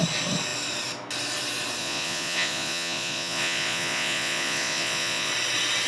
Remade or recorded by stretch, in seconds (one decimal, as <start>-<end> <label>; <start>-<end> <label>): 0.0-1.8 recorded; 1.8-5.3 remade; 5.3-5.9 recorded